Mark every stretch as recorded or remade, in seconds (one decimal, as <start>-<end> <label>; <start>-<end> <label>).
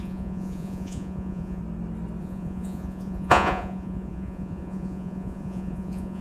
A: 0.0-1.6 remade; 1.6-2.2 recorded; 2.2-6.2 remade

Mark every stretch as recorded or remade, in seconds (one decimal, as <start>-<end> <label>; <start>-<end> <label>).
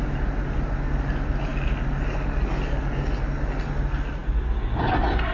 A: 0.0-5.3 recorded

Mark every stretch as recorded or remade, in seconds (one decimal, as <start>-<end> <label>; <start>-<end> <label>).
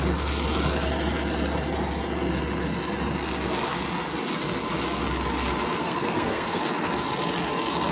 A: 0.0-5.8 recorded; 5.8-6.6 remade; 6.6-7.9 recorded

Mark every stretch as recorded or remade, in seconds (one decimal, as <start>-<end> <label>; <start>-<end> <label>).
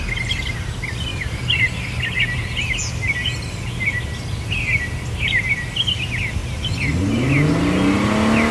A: 0.0-1.1 recorded; 1.1-2.0 remade; 2.0-8.5 recorded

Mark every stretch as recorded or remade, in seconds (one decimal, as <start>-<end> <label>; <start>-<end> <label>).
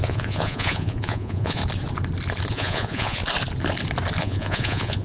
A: 0.0-1.6 remade; 1.6-2.5 recorded; 2.5-3.2 remade; 3.2-4.2 recorded; 4.2-5.0 remade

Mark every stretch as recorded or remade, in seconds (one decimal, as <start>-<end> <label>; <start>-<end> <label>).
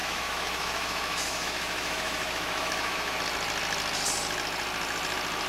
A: 0.0-3.2 remade; 3.2-5.5 recorded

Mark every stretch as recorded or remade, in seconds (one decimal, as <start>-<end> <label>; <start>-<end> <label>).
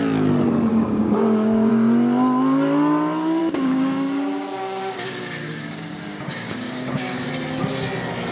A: 0.0-0.7 recorded; 0.7-1.7 remade; 1.7-3.4 recorded; 3.4-7.3 remade; 7.3-8.3 recorded